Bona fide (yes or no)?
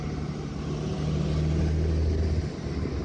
yes